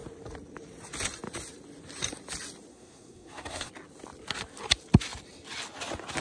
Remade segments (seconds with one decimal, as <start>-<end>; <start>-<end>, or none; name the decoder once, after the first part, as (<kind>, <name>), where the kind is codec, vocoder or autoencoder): 2.7-3.7 (codec, SNAC)